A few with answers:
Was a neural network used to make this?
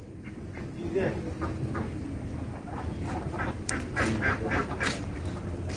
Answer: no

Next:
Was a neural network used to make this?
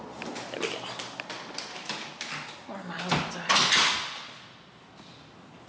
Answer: no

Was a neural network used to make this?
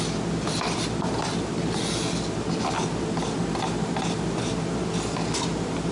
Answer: no